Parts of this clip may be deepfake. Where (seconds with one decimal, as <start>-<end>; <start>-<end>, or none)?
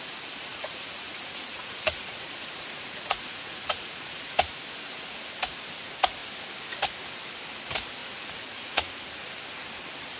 0.5-4.1; 8.0-9.0